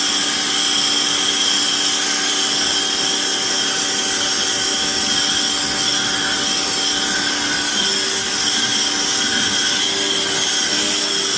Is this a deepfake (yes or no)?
no